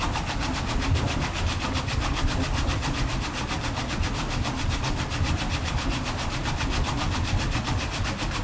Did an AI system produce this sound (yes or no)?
no